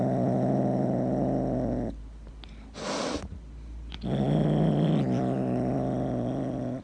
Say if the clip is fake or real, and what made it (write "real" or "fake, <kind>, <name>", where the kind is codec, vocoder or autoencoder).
real